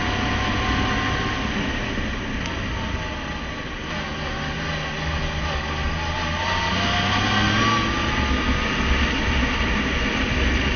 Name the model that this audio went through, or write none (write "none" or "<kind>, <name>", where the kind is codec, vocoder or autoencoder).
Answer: none